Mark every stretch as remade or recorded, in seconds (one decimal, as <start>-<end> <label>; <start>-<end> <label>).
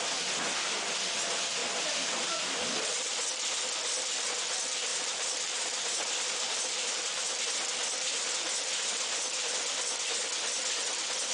0.0-4.9 recorded; 4.9-7.4 remade; 7.4-11.3 recorded